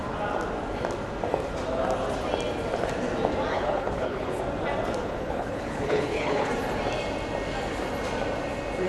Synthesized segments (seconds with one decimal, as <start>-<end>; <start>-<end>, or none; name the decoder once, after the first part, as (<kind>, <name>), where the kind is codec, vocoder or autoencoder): 3.5-4.4 (codec, HILCodec); 5.0-6.5